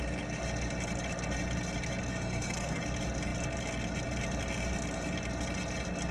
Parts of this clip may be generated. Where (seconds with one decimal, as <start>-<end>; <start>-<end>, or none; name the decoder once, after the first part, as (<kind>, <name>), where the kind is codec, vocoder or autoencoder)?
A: 2.1-2.8 (codec, SNAC)